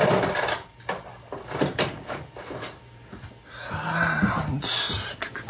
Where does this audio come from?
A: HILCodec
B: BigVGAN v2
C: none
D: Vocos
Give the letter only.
C